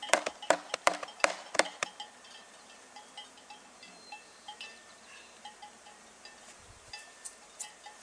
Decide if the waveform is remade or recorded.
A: remade